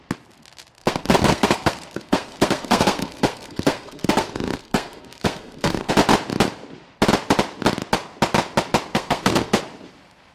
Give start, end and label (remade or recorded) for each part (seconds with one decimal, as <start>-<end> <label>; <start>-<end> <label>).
0.0-0.8 recorded; 0.8-5.9 remade; 5.9-8.9 recorded; 8.9-9.6 remade; 9.6-10.3 recorded